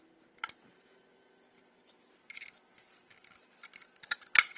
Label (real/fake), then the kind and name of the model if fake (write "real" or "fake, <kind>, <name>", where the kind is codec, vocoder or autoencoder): real